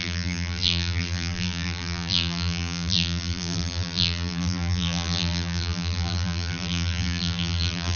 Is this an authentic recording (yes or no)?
no